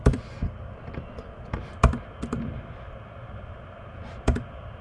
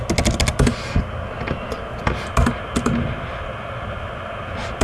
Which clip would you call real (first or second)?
second